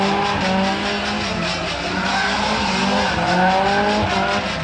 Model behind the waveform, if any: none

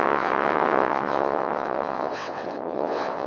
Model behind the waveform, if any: vocoder, WaveNeXt